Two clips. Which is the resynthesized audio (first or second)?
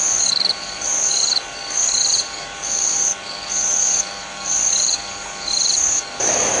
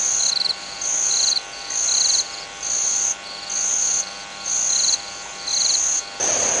first